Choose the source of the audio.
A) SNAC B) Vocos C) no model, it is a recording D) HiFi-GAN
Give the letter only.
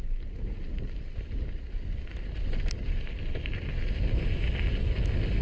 C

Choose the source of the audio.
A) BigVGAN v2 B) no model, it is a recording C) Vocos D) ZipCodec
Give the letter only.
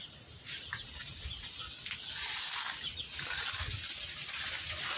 B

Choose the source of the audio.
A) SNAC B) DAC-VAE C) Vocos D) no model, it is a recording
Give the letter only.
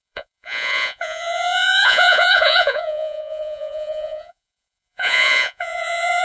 C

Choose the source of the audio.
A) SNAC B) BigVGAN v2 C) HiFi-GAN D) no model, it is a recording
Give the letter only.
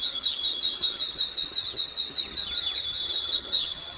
C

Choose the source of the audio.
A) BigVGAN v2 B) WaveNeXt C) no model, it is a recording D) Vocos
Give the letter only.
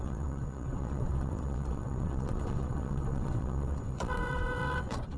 B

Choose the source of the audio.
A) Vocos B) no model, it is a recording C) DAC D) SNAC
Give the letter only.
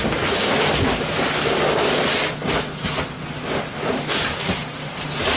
B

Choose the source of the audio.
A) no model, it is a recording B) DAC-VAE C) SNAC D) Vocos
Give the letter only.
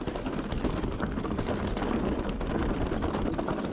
A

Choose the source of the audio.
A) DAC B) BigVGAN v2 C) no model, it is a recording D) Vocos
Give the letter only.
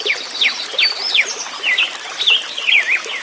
C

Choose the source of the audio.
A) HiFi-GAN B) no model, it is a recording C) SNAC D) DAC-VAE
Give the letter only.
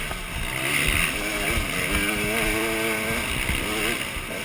B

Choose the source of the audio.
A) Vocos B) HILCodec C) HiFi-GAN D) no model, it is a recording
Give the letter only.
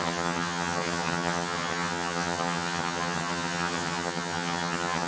C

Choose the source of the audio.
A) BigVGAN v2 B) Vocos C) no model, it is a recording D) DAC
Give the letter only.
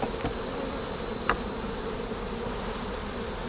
C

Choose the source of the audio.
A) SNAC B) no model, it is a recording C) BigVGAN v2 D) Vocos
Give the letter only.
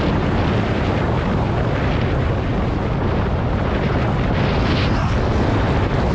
B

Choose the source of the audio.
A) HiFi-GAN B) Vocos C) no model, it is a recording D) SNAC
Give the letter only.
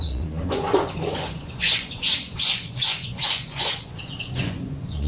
B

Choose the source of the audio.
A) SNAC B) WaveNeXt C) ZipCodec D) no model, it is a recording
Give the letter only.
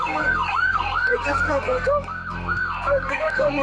A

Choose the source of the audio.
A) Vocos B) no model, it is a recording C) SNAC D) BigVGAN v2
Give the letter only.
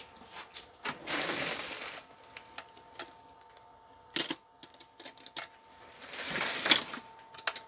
B